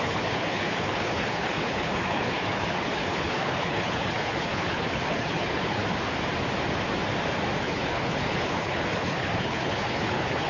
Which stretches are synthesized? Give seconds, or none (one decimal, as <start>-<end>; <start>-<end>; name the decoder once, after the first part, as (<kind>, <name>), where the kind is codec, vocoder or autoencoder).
0.0-5.8 (codec, HILCodec); 7.6-10.5